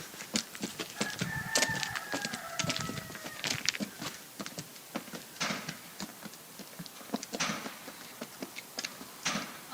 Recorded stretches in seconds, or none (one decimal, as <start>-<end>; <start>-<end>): 6.1-7.5